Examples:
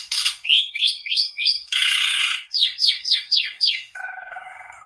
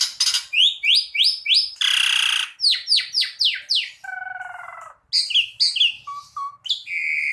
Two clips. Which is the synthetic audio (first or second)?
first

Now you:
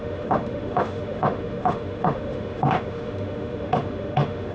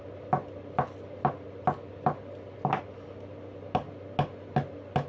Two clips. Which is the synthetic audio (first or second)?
first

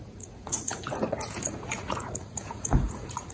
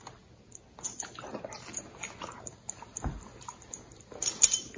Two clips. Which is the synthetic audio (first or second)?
first